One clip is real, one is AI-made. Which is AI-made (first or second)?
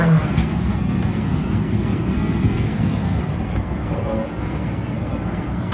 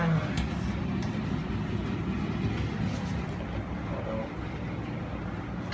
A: first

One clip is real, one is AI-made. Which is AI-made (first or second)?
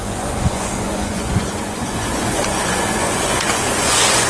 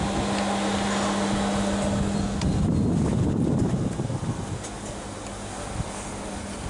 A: first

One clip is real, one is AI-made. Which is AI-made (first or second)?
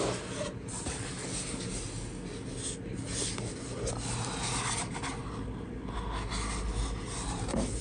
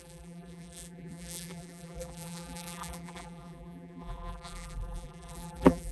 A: second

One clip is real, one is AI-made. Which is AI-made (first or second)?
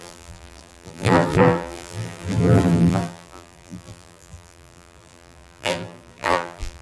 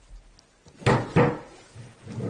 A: first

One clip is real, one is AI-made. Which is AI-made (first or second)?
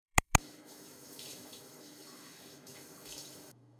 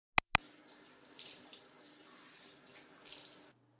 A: first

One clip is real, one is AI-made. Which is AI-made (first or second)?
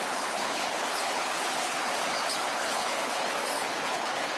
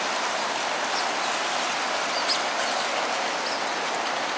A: first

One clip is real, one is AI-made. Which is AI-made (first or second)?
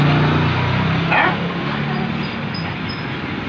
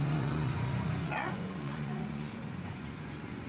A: second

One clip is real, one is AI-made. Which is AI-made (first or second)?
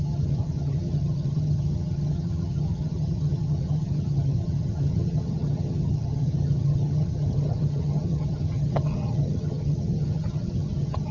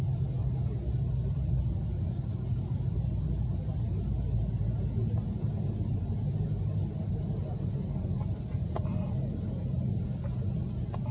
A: first